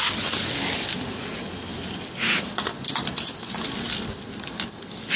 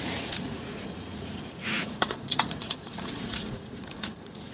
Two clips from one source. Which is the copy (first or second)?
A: second